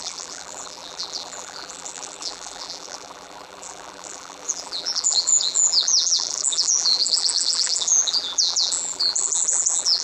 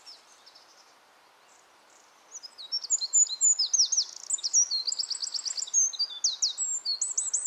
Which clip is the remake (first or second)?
first